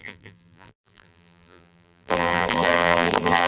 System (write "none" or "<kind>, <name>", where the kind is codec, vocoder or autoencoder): vocoder, BigVGAN v2